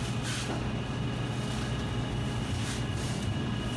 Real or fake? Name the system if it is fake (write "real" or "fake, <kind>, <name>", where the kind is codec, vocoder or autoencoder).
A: real